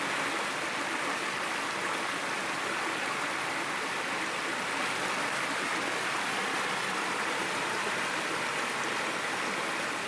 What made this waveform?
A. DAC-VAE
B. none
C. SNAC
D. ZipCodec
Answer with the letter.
B